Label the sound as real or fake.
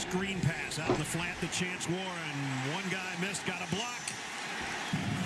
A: real